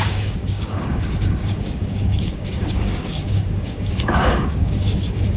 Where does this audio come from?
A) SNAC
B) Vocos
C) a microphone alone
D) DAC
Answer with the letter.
D